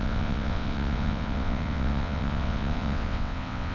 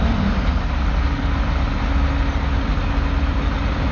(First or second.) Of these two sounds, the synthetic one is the first